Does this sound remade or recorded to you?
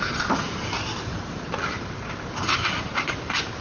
remade